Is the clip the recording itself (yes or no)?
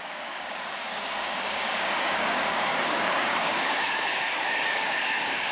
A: no